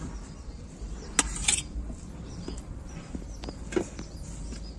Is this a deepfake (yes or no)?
no